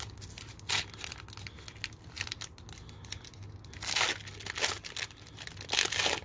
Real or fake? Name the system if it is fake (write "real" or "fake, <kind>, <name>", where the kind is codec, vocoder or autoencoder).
real